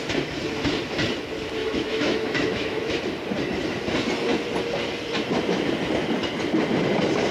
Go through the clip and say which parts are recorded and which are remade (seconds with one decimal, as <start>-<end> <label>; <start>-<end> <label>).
0.0-1.6 recorded; 1.6-3.0 remade; 3.0-7.3 recorded